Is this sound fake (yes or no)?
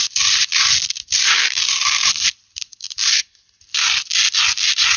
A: yes